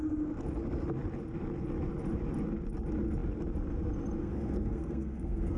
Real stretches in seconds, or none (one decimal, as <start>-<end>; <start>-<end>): 0.0-4.2